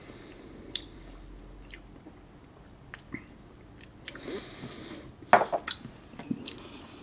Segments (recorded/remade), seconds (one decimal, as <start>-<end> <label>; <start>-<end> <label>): 0.0-2.5 remade; 2.5-7.0 recorded